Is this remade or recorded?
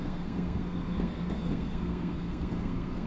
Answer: remade